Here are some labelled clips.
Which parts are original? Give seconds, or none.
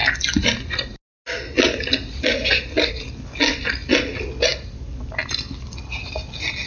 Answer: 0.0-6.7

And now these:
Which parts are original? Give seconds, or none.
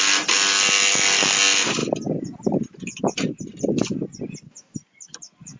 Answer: 0.0-5.6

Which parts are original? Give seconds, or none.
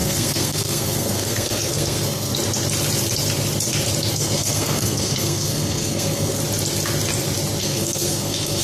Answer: 2.3-4.1; 6.4-7.6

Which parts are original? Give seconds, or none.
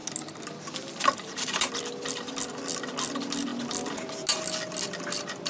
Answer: 0.0-5.5